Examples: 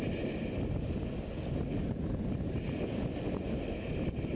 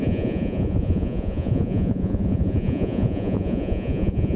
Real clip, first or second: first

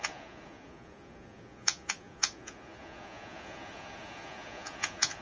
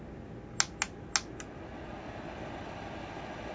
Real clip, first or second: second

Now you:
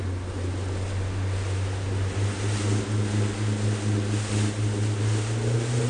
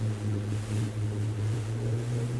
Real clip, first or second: first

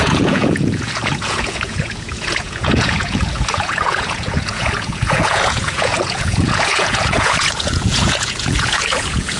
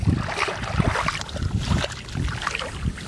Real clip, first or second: second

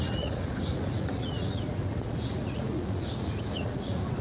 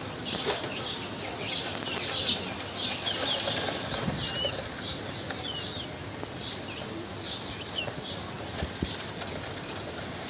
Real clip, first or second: second